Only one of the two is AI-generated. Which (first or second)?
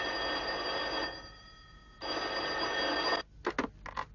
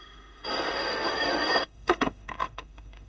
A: second